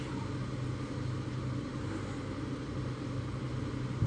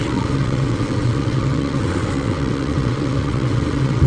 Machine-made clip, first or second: second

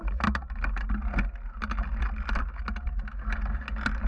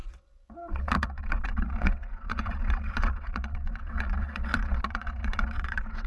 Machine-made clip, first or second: second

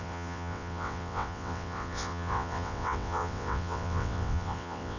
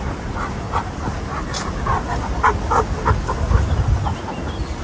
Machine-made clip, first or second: first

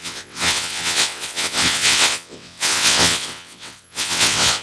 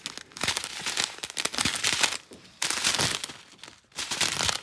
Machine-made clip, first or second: first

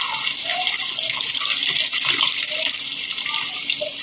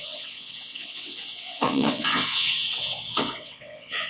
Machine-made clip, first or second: second